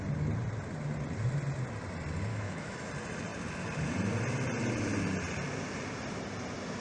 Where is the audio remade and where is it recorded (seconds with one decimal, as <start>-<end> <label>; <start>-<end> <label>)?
0.0-2.3 recorded; 2.3-2.9 remade; 2.9-6.8 recorded